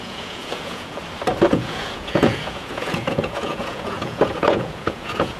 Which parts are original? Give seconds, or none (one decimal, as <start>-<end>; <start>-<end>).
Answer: 1.0-1.5

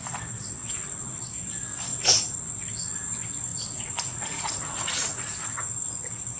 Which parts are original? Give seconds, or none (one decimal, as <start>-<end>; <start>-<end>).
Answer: 0.0-0.6; 1.2-1.9; 2.4-3.5

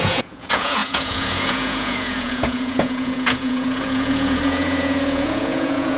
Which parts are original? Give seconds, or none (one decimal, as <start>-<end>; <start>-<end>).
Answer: none

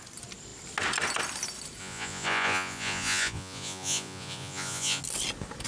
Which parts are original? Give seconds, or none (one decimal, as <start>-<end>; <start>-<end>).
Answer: 0.0-1.8; 5.0-5.7

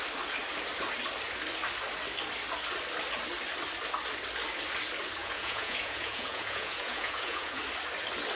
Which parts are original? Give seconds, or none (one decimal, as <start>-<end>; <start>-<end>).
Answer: 0.0-5.2; 7.6-8.3

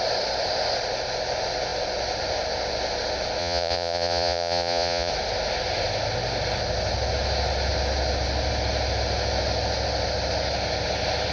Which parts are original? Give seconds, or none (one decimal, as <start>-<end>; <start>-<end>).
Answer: 0.0-3.4; 5.1-11.3